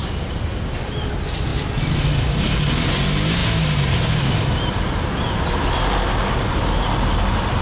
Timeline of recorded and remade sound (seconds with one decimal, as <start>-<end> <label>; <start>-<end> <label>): 0.0-7.6 recorded